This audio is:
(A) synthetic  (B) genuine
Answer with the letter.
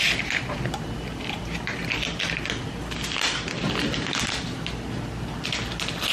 B